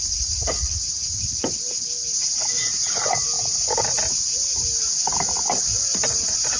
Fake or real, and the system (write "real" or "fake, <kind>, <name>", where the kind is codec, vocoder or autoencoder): fake, vocoder, BigVGAN v2